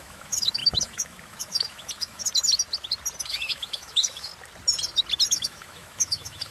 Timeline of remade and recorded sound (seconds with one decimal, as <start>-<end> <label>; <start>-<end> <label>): 0.0-2.3 remade; 2.3-3.2 recorded; 3.2-4.3 remade; 4.3-5.3 recorded; 5.3-6.5 remade